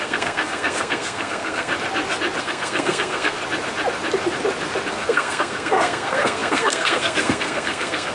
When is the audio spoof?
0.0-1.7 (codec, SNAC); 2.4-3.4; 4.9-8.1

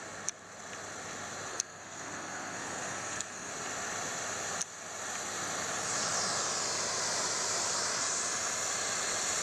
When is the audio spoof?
1.5-3.5 (codec, SNAC)

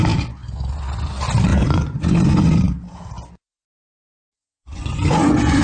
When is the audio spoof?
1.5-2.6 (vocoder, Vocos); 3.7-5.6